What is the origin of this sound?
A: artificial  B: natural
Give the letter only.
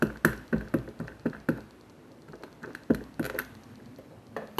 B